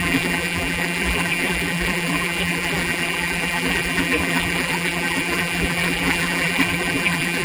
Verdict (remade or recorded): remade